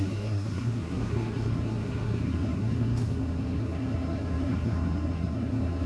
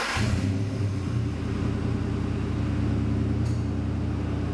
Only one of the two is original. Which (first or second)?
second